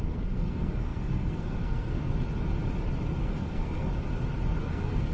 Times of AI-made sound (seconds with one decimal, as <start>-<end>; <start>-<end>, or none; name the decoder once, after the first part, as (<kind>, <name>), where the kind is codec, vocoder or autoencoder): 0.0-2.1 (codec, SNAC); 3.2-3.9; 4.6-5.1